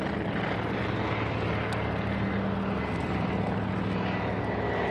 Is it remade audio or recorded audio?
recorded